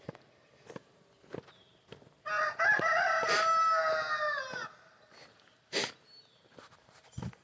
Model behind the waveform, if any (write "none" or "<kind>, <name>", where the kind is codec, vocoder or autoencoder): none